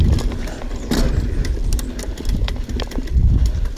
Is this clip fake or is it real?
real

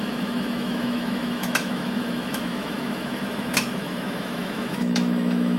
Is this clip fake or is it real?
fake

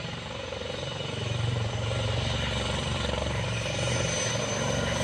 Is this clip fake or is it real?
fake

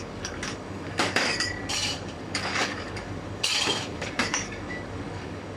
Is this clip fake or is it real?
fake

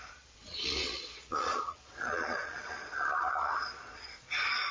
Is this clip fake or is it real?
fake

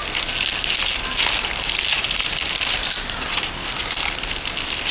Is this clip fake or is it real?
real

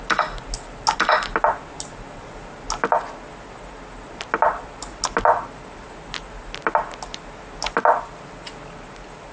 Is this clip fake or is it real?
real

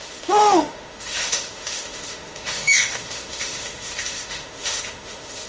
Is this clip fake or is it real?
fake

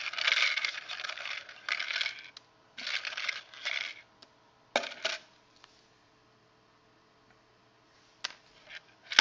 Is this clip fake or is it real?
real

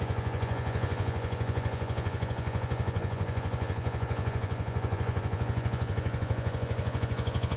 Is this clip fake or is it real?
fake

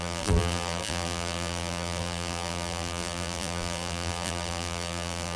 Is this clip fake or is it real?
fake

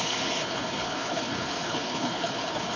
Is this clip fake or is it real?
fake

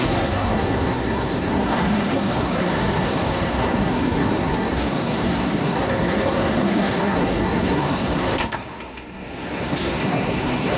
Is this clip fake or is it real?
fake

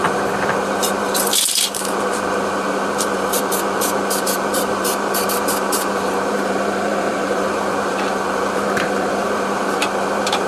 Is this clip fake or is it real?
fake